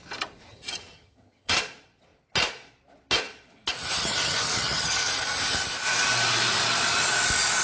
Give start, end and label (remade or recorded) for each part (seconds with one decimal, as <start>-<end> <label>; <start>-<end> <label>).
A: 0.0-0.5 recorded; 0.5-1.5 remade; 1.5-4.0 recorded; 4.0-5.1 remade; 5.1-7.6 recorded